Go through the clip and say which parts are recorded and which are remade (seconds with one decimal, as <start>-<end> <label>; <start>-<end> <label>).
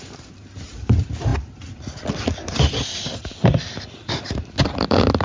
0.0-1.3 remade; 1.3-4.4 recorded; 4.4-5.2 remade